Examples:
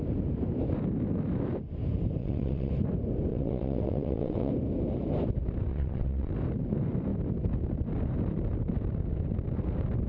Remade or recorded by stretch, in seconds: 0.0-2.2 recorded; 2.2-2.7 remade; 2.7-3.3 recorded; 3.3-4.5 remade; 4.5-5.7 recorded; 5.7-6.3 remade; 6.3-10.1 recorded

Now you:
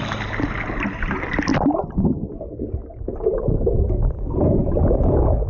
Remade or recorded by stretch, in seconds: 0.0-1.5 recorded; 1.5-4.8 remade; 4.8-5.5 recorded

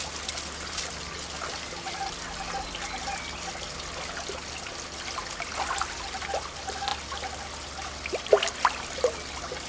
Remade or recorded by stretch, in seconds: 0.0-9.7 recorded

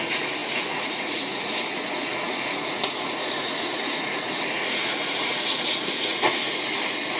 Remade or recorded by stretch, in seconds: 0.0-7.2 remade